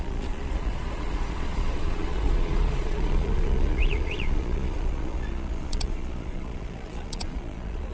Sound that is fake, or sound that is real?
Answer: fake